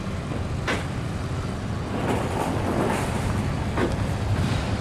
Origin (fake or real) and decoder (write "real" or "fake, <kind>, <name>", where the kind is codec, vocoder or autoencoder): fake, vocoder, BigVGAN v2